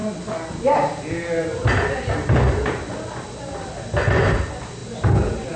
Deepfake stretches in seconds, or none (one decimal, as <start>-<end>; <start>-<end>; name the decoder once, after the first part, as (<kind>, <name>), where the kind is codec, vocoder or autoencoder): none